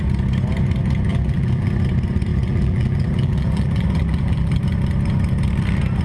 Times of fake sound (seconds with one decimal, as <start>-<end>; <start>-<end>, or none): 1.1-1.7; 2.3-4.6

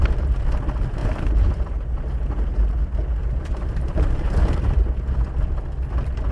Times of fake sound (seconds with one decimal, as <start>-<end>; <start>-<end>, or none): 1.0-1.9; 3.2-4.9

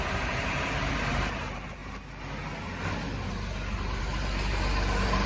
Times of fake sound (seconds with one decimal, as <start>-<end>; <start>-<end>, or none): 0.0-1.8; 4.0-5.3